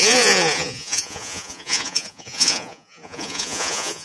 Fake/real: fake